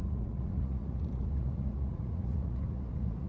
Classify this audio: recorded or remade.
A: remade